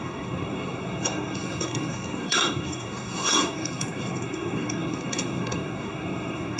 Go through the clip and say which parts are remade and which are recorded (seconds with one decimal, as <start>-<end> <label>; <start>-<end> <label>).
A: 0.0-6.6 remade